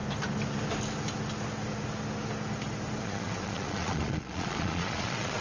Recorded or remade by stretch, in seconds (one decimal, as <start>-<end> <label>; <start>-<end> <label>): 0.0-3.0 recorded; 3.0-5.4 remade